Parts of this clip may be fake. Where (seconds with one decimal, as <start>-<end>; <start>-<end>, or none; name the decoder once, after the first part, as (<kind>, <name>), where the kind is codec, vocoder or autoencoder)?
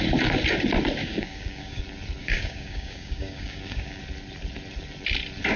1.0-1.8 (codec, DAC); 2.2-4.0